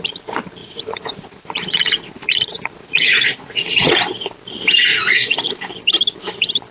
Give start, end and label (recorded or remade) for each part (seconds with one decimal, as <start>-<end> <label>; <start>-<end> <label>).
0.0-0.6 recorded; 0.6-4.0 remade; 4.0-4.9 recorded; 4.9-5.5 remade; 5.5-6.7 recorded